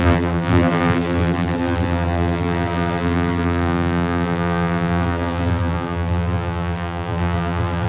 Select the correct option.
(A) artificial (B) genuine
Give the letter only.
A